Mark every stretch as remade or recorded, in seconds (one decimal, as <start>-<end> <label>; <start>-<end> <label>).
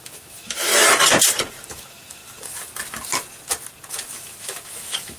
0.0-0.7 remade; 0.7-1.7 recorded; 1.7-2.2 remade; 2.2-3.9 recorded; 3.9-5.2 remade